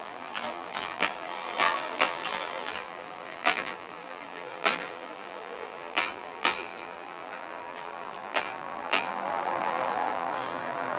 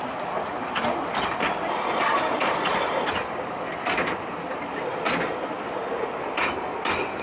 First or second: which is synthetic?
first